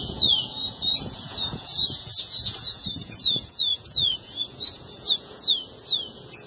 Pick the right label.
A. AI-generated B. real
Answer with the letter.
A